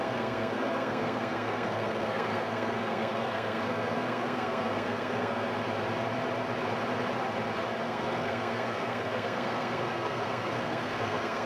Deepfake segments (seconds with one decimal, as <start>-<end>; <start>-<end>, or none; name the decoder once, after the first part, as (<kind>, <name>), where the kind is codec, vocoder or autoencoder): 0.0-5.5 (codec, SNAC); 7.8-11.5